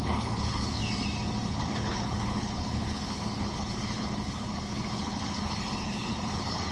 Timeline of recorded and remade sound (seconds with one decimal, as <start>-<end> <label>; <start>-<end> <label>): 0.0-0.8 remade; 0.8-1.5 recorded; 1.5-6.7 remade